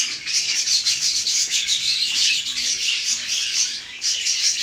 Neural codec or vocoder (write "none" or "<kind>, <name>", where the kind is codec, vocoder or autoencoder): codec, DAC